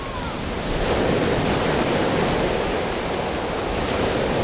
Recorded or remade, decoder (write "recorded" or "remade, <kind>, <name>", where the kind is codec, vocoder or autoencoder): recorded